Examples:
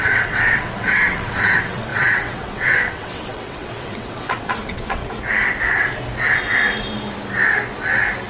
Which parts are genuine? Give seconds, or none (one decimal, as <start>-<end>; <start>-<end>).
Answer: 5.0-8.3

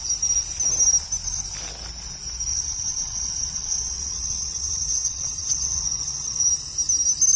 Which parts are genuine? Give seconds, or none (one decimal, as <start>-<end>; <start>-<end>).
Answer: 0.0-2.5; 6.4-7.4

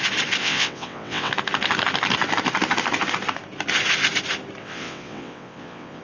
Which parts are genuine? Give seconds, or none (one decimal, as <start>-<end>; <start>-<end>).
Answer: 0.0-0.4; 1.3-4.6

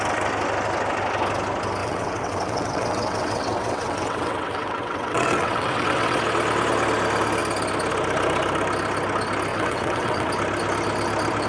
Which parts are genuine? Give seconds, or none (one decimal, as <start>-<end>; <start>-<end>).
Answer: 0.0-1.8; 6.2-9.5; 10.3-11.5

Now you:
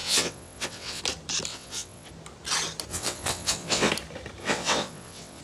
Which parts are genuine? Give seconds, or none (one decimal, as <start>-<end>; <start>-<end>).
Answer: 1.0-1.5; 2.1-2.9; 3.9-4.4

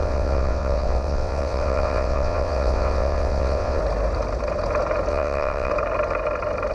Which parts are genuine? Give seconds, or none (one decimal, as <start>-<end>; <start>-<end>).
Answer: 3.8-5.1; 5.7-6.7

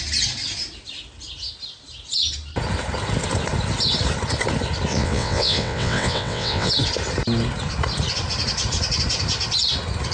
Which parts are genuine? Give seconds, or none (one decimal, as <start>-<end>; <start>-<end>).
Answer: 0.0-4.9; 6.7-10.1